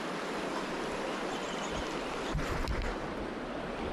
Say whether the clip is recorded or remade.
recorded